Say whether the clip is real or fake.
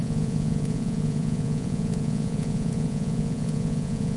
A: fake